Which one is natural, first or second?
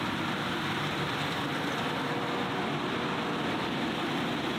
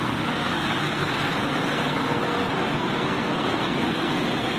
first